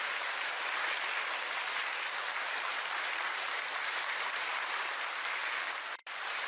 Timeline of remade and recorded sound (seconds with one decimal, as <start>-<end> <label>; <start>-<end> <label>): 0.0-1.8 recorded; 1.8-4.9 remade; 4.9-6.0 recorded; 6.0-6.5 remade